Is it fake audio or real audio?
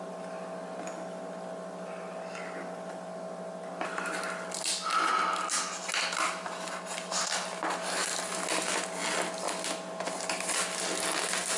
real